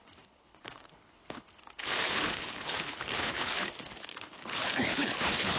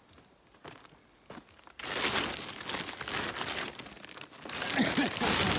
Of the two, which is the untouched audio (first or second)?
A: second